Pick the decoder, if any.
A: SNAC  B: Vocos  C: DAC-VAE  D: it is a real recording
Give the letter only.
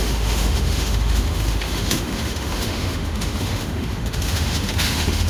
C